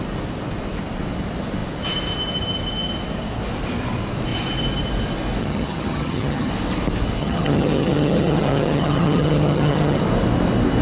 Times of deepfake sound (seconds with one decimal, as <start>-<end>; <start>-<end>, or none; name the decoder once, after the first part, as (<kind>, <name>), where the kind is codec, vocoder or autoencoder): 5.4-6.5 (vocoder, HiFi-GAN); 7.2-10.0